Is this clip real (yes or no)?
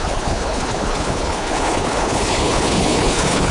no